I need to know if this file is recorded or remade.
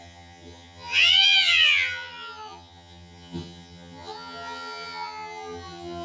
remade